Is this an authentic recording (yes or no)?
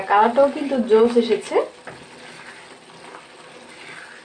yes